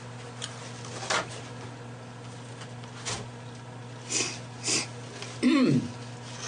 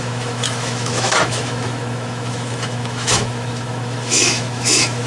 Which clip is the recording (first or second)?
first